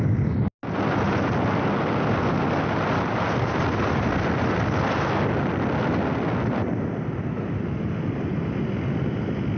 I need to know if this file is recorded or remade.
recorded